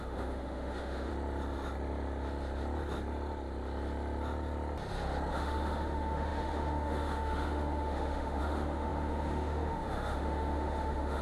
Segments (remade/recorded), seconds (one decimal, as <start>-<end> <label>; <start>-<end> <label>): 0.0-1.1 remade; 1.1-5.3 recorded; 5.3-11.2 remade